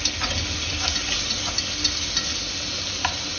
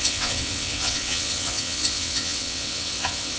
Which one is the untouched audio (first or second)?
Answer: first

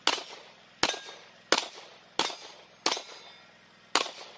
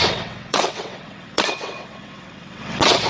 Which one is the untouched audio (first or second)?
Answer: first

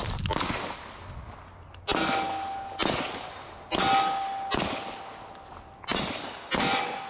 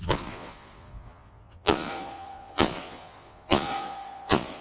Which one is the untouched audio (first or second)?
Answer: first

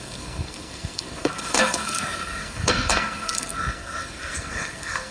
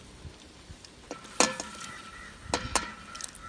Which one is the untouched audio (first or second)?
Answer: second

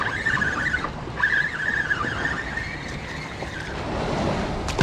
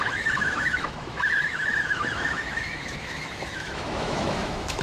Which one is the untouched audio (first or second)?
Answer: first